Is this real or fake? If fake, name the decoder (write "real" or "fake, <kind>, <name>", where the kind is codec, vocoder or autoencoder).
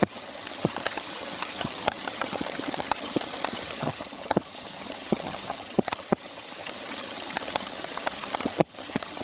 fake, vocoder, HiFi-GAN